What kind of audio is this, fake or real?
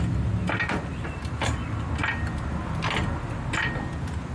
real